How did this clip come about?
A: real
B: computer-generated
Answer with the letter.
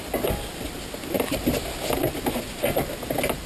A